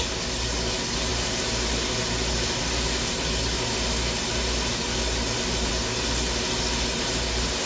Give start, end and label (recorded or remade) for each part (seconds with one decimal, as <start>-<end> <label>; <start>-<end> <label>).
0.0-7.7 recorded

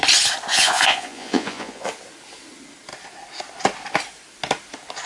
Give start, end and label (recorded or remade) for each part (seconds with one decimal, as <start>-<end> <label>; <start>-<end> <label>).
0.0-0.5 recorded; 0.5-1.9 remade; 1.9-5.1 recorded